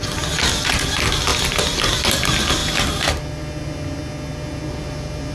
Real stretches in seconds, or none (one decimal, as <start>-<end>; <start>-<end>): 0.0-5.3